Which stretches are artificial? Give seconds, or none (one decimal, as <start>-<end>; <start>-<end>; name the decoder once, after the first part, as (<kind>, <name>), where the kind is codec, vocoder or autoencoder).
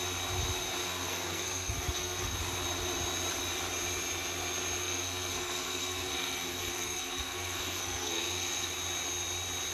0.8-2.4 (codec, SNAC); 4.8-8.7